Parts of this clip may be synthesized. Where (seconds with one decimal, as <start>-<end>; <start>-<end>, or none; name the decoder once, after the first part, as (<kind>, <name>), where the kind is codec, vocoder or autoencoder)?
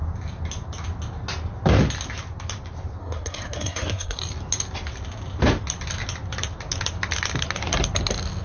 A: 3.0-4.2 (codec, SNAC)